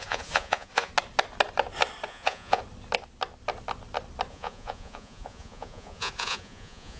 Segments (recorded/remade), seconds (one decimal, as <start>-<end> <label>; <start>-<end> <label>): 0.0-0.9 remade; 0.9-2.1 recorded; 2.1-2.6 remade; 2.6-4.3 recorded; 4.3-7.0 remade